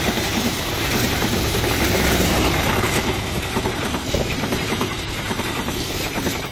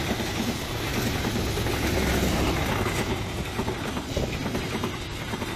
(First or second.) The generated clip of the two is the first